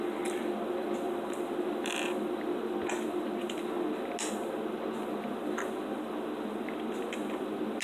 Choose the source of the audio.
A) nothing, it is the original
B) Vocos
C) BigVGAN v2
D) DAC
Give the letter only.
A